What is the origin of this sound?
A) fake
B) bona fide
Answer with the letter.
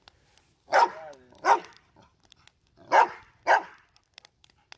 B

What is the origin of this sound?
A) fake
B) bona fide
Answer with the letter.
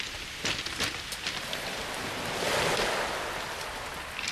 B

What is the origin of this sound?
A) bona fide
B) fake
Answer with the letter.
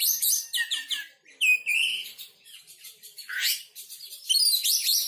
B